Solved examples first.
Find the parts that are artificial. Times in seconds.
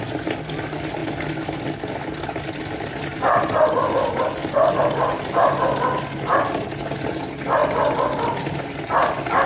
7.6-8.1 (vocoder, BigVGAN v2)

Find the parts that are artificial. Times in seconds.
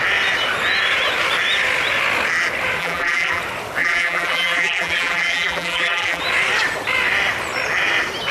2.8-3.4 (vocoder, BigVGAN v2); 3.8-6.2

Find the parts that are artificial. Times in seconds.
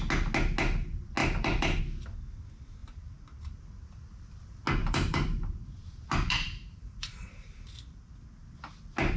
1.2-1.8 (vocoder, BigVGAN v2); 2.8-3.6; 4.8-7.7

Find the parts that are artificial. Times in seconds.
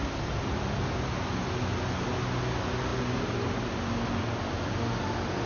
0.0-0.8 (vocoder, BigVGAN v2)